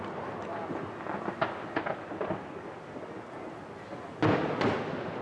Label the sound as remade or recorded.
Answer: recorded